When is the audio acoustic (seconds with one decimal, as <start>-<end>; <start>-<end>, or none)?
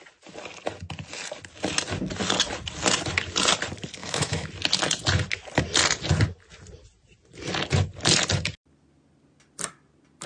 0.0-4.0; 4.5-10.3